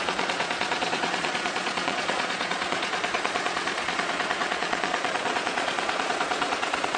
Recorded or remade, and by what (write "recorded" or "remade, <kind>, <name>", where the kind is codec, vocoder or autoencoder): remade, vocoder, Vocos